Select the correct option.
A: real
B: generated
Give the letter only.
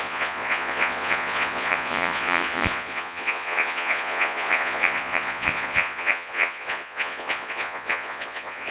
B